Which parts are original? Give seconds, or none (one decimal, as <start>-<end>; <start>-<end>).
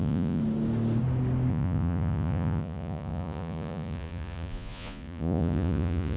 0.4-1.5